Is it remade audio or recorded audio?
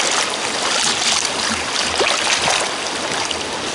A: recorded